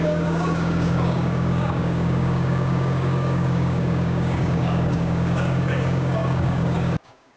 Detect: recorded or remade remade